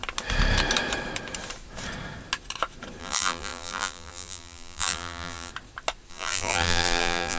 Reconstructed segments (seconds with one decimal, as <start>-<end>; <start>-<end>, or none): 3.0-5.5; 6.1-7.4